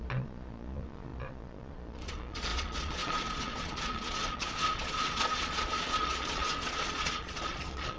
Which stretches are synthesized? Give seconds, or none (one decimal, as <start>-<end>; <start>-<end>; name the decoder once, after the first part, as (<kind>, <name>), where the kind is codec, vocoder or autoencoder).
0.0-8.0 (vocoder, Vocos)